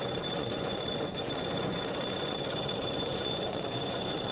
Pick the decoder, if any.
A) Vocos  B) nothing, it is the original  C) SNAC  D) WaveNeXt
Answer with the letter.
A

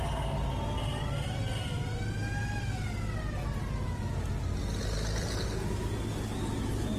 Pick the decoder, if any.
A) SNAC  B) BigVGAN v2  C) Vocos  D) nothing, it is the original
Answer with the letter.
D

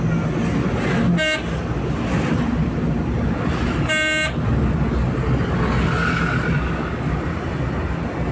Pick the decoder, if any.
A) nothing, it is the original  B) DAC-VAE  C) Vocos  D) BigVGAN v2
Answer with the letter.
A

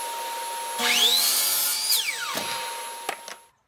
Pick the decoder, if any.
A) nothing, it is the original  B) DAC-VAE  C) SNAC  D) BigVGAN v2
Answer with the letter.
A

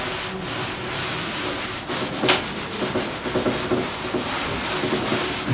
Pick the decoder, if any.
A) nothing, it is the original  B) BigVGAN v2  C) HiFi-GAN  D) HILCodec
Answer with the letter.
A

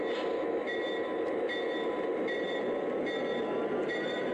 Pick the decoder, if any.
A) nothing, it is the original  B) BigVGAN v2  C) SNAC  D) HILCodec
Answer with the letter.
B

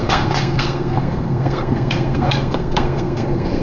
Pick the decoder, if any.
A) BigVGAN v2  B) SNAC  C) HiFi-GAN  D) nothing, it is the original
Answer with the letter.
B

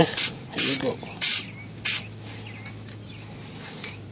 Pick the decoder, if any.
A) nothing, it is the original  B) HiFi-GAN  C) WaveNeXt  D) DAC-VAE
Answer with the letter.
A